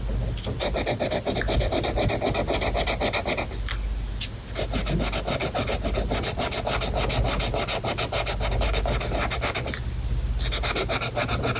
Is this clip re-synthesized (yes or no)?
no